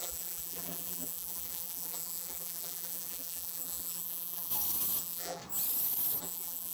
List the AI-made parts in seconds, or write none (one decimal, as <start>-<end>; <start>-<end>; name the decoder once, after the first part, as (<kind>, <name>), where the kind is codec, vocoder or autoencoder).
0.0-4.5 (vocoder, BigVGAN v2); 5.0-5.4; 6.2-6.7